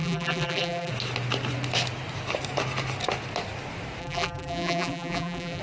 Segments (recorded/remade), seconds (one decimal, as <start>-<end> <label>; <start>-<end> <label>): 0.0-0.9 remade; 0.9-4.0 recorded; 4.0-5.6 remade